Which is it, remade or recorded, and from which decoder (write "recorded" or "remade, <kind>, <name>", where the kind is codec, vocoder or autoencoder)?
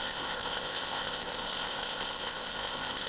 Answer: remade, codec, ZipCodec